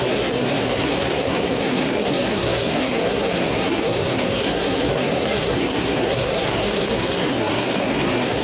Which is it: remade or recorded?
remade